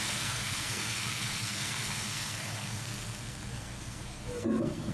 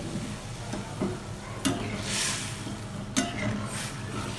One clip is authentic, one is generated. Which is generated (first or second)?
first